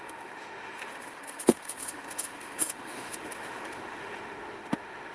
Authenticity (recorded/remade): remade